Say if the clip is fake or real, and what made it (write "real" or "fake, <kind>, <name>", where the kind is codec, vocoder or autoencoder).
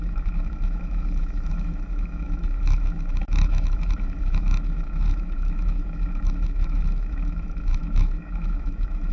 fake, autoencoder, DAC-VAE